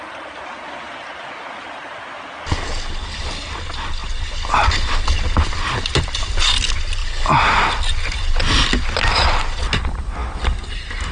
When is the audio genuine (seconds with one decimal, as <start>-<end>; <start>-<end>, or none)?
0.0-11.1